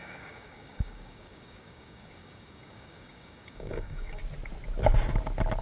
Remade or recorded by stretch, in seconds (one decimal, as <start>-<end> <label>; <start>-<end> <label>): 0.0-4.2 remade; 4.2-5.6 recorded